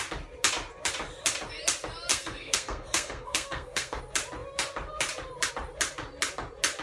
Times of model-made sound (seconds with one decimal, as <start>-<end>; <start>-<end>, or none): 2.1-4.0